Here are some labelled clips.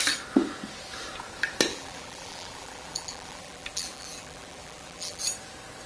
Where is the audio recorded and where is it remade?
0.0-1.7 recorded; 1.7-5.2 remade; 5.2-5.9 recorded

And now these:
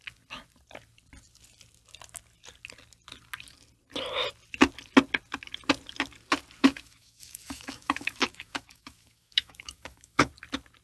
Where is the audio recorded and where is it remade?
0.0-6.6 recorded; 6.6-10.3 remade; 10.3-10.8 recorded

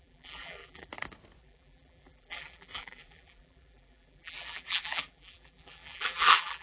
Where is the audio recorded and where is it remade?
0.0-0.9 remade; 0.9-1.4 recorded; 1.4-6.6 remade

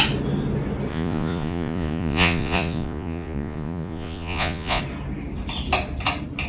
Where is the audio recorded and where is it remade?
0.0-0.9 recorded; 0.9-4.8 remade; 4.8-6.5 recorded

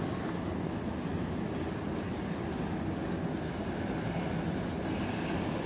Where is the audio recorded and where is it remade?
0.0-5.7 recorded

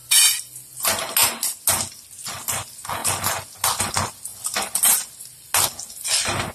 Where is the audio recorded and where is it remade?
0.0-6.5 recorded